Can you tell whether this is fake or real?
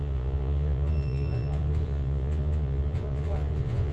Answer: fake